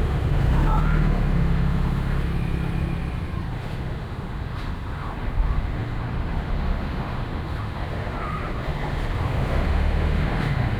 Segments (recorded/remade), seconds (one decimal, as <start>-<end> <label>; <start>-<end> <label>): 0.0-2.3 remade; 2.3-3.5 recorded; 3.5-10.8 remade